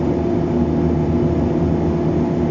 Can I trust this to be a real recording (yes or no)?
yes